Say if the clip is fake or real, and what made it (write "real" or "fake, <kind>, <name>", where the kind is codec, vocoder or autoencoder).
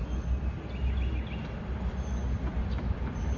real